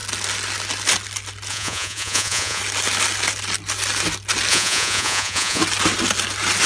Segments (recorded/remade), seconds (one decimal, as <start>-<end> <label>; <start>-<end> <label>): 0.0-1.5 recorded; 1.5-2.6 remade; 2.6-4.5 recorded; 4.5-5.6 remade; 5.6-6.7 recorded